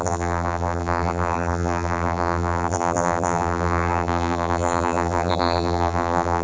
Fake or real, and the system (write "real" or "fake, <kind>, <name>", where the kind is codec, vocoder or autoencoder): fake, vocoder, BigVGAN v2